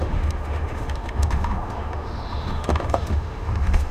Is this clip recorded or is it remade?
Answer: remade